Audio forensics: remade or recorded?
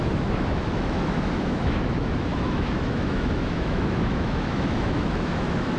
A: remade